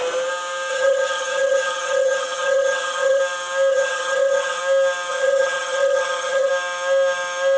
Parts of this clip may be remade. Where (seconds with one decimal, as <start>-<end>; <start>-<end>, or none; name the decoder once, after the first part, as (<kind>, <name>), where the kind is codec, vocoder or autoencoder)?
0.7-3.2 (vocoder, HiFi-GAN); 3.7-4.6; 5.1-6.5